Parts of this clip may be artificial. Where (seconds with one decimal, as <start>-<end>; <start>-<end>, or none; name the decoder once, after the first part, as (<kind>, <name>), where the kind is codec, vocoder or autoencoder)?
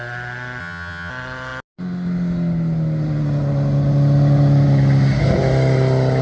0.6-1.1 (vocoder, HiFi-GAN)